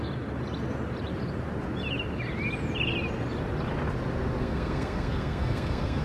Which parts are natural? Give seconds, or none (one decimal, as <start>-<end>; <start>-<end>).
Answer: 0.0-4.4